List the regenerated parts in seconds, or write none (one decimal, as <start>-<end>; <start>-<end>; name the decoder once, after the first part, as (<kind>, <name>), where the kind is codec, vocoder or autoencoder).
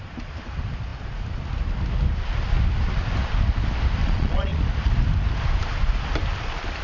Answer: 4.0-4.6 (vocoder, Vocos)